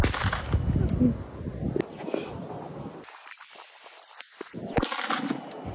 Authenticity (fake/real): real